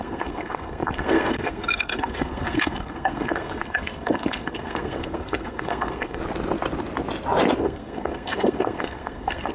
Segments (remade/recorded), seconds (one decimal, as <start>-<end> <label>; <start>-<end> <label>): 0.0-6.2 remade; 6.2-7.6 recorded; 7.6-9.5 remade